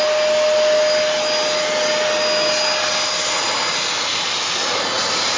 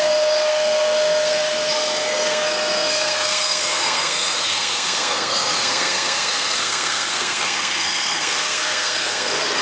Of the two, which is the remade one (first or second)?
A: second